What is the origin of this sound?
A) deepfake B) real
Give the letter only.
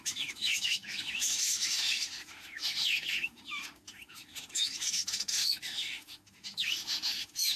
A